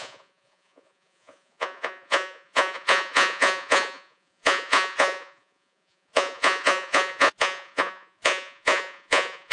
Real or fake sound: fake